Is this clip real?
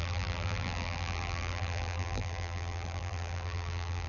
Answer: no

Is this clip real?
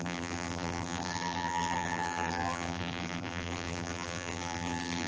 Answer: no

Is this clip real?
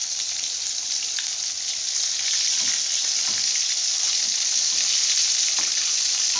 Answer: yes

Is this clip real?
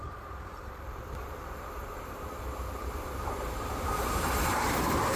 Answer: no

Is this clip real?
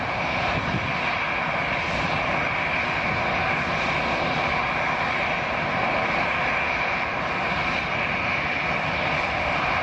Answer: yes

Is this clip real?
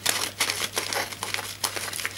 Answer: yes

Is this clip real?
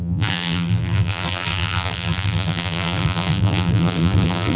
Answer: no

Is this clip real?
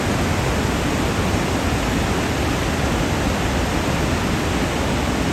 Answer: yes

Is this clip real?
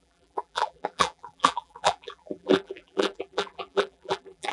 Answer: no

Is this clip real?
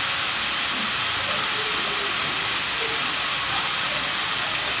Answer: yes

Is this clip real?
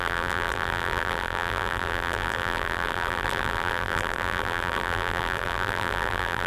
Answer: no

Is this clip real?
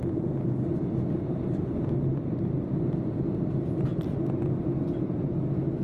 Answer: yes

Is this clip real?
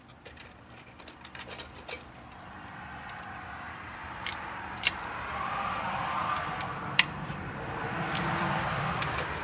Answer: no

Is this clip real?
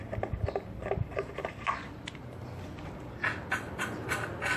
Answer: yes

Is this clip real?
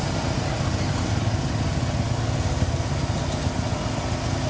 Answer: yes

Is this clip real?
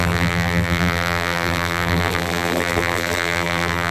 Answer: no